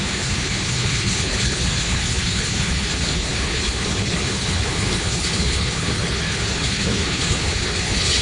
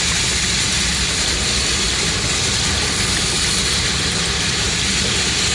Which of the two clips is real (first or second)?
second